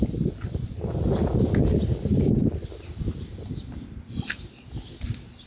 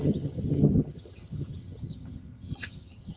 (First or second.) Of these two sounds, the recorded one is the first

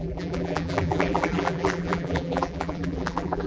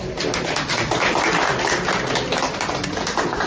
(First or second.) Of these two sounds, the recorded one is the second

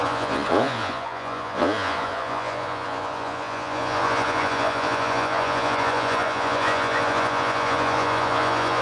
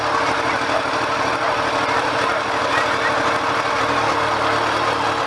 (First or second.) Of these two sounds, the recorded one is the second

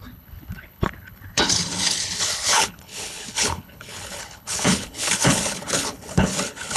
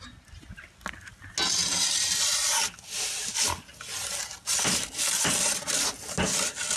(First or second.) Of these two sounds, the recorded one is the second